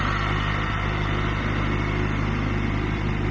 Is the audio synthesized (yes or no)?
no